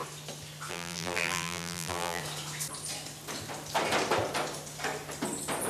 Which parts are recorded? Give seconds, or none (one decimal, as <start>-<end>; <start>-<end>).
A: 0.0-0.7; 2.2-5.7